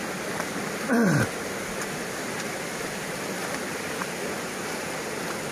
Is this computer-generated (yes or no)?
no